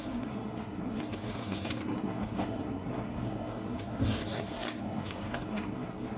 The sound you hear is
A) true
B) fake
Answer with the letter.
B